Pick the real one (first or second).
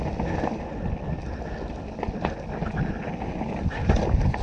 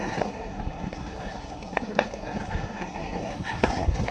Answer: first